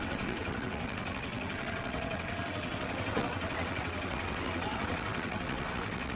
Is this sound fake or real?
fake